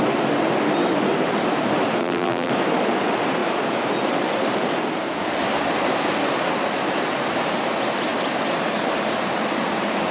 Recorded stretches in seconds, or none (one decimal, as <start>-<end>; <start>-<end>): 0.0-2.0; 2.5-10.1